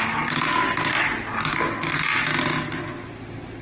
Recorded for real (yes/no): yes